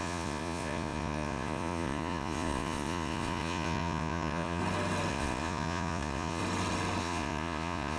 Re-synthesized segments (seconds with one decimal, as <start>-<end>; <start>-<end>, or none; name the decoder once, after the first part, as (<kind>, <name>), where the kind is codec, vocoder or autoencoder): 0.0-4.6 (vocoder, Vocos); 5.1-6.4; 7.0-8.0